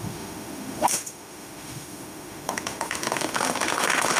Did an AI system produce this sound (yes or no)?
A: yes